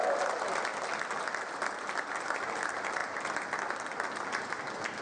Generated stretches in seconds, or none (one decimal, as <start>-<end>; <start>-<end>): none